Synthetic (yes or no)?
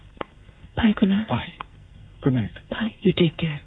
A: yes